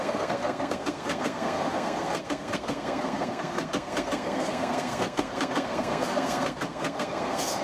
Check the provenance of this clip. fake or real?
fake